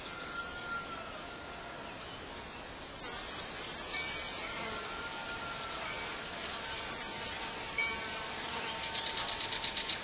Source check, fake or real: real